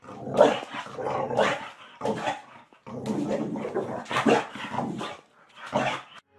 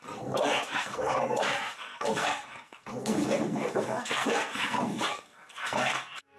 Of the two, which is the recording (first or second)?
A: first